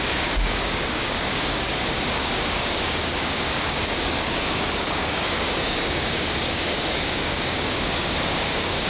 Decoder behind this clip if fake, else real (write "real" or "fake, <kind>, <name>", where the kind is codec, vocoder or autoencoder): fake, codec, DAC